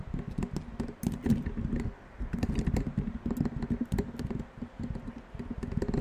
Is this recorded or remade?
recorded